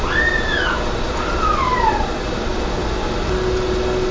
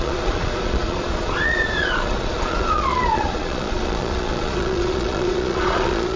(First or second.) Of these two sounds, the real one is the first